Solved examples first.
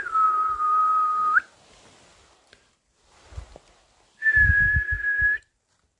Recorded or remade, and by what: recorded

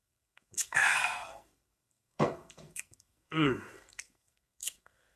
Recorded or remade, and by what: remade, codec, SNAC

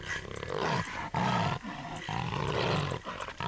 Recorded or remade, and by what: recorded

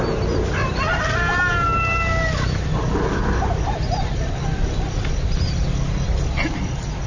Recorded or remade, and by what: recorded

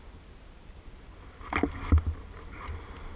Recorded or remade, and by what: recorded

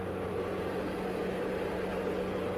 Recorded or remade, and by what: recorded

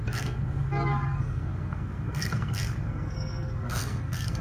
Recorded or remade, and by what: remade, codec, SNAC